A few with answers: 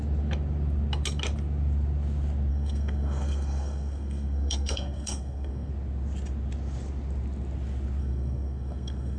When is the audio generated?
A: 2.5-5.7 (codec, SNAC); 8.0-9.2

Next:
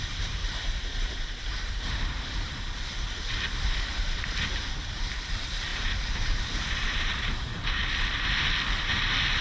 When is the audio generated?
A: 0.0-7.8 (vocoder, BigVGAN v2); 8.8-9.4

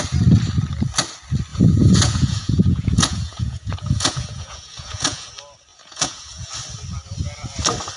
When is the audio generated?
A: 1.5-5.3 (vocoder, Vocos); 5.7-6.5

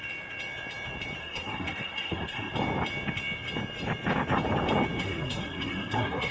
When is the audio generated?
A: 1.2-2.5 (codec, SNAC); 5.0-6.3

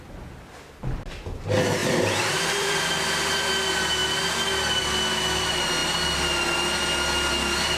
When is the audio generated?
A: 1.8-3.5 (vocoder, BigVGAN v2)

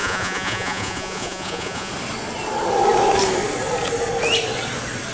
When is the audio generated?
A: 0.0-1.9 (vocoder, Vocos)

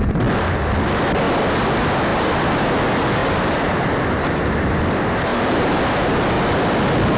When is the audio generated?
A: 2.1-2.7 (vocoder, BigVGAN v2); 3.2-4.7; 5.3-5.8